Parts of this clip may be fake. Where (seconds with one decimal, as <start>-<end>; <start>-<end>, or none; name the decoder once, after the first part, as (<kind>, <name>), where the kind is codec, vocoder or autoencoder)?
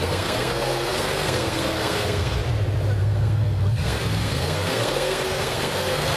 0.0-2.4 (codec, SNAC); 3.0-6.2